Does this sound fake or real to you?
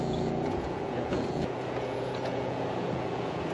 fake